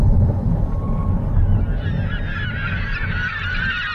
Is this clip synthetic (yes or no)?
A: no